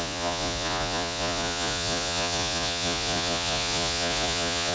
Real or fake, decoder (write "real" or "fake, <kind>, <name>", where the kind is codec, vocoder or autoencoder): fake, vocoder, Vocos